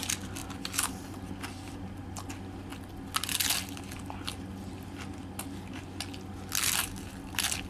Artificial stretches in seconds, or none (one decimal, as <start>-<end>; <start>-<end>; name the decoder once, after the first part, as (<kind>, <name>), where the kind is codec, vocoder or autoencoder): none